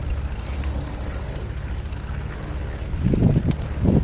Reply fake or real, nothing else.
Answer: real